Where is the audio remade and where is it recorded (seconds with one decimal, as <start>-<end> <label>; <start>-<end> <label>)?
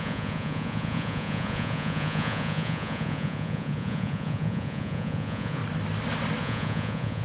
0.0-5.6 remade; 5.6-6.4 recorded; 6.4-7.2 remade